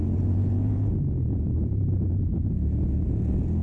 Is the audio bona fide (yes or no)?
no